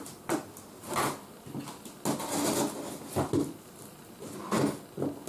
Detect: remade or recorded recorded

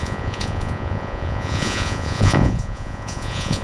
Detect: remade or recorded remade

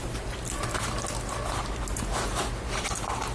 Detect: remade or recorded recorded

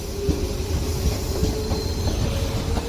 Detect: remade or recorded recorded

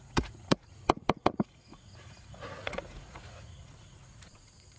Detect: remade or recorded remade